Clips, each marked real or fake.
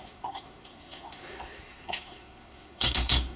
fake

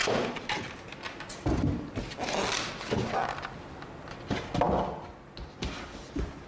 real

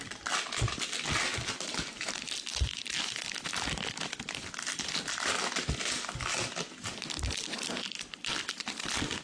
real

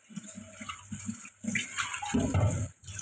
real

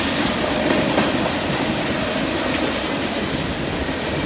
real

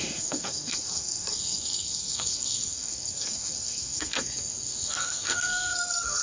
fake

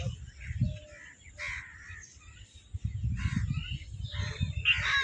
real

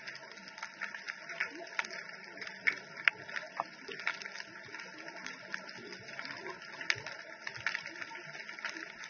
real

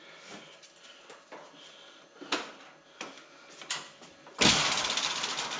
real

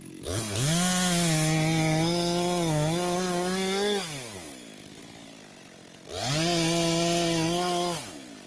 real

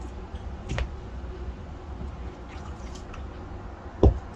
fake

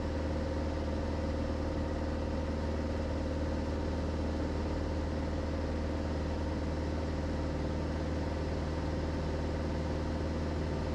real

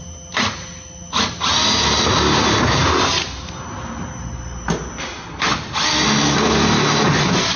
real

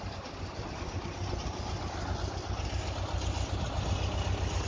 real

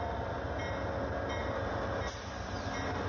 real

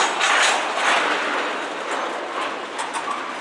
real